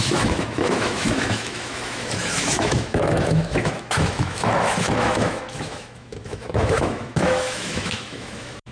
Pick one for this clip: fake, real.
fake